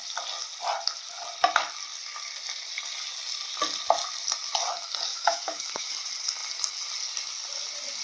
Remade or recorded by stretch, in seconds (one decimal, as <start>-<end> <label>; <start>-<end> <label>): 0.0-5.1 recorded; 5.1-5.9 remade; 5.9-8.0 recorded